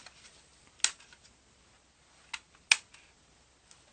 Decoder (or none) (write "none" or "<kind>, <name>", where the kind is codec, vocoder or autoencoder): none